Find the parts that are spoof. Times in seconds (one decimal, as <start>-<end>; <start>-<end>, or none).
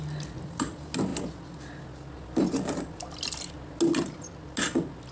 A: none